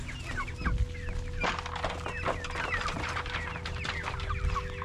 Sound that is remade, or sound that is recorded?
recorded